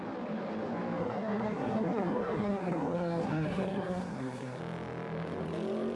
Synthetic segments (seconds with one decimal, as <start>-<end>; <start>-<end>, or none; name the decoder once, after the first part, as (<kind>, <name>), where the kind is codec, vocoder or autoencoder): 1.0-4.6 (codec, SNAC)